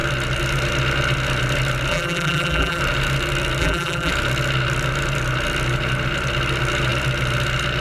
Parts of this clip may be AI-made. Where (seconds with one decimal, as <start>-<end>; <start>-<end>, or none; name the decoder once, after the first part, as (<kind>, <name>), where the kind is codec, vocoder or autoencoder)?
1.9-2.8 (vocoder, BigVGAN v2); 3.6-4.1